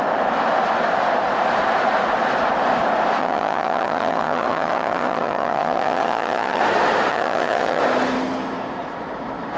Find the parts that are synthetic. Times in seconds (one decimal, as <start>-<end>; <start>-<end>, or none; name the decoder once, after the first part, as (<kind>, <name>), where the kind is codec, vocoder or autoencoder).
3.2-6.6 (vocoder, HiFi-GAN); 7.1-7.8